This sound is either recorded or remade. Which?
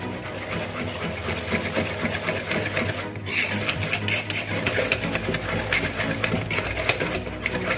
recorded